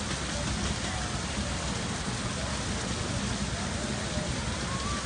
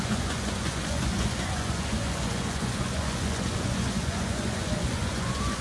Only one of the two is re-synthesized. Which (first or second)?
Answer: second